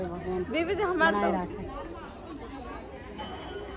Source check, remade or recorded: recorded